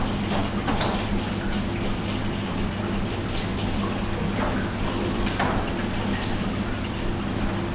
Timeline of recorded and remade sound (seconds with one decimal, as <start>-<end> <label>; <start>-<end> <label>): 0.0-7.7 recorded